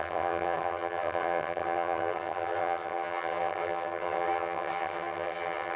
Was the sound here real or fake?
fake